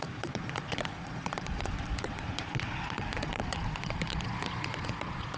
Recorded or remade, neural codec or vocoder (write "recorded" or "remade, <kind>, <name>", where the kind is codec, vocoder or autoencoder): remade, vocoder, Vocos